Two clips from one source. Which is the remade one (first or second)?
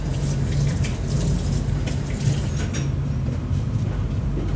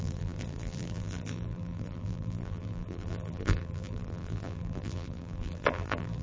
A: second